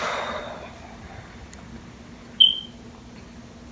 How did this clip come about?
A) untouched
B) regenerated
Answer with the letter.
A